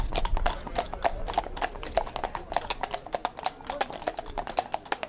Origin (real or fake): real